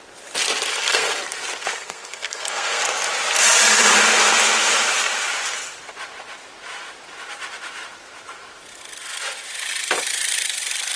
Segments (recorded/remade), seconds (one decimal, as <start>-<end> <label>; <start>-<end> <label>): 0.0-0.7 recorded; 0.7-1.2 remade; 1.2-1.6 recorded; 1.6-2.8 remade; 2.8-11.0 recorded